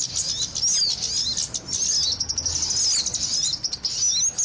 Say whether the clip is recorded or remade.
recorded